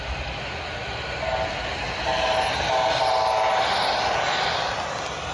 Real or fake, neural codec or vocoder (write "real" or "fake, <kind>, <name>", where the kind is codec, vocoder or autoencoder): real